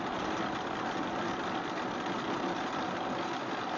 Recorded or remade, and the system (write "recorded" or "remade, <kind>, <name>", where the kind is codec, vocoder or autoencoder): recorded